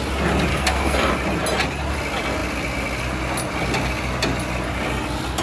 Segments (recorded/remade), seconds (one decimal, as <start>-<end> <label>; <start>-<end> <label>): 0.0-0.5 recorded; 0.5-1.1 remade; 1.1-5.4 recorded